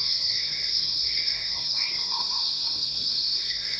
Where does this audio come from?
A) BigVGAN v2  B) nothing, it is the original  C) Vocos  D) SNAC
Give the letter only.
D